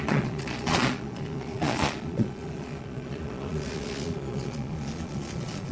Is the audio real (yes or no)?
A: no